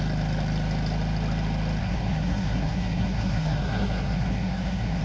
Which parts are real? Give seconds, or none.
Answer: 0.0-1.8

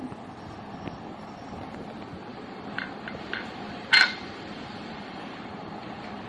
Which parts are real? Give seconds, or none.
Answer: 0.0-2.3

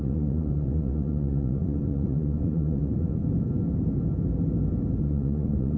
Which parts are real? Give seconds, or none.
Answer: 3.2-5.0

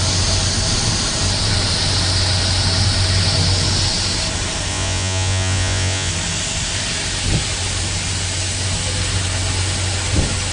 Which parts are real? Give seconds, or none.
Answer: 0.0-4.7; 6.1-10.5

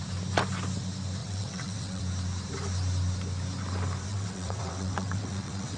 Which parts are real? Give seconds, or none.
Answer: 0.0-1.2; 2.0-4.1